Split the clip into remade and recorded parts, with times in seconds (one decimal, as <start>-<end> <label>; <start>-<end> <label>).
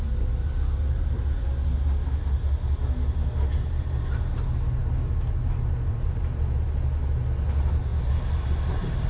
0.0-4.8 recorded; 4.8-6.4 remade; 6.4-9.1 recorded